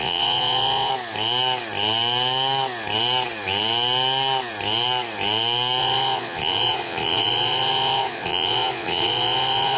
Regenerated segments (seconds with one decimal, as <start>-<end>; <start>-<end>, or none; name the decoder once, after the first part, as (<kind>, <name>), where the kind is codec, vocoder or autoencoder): 0.0-0.9 (vocoder, Vocos); 5.8-9.8